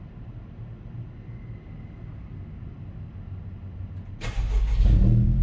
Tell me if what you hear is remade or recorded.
recorded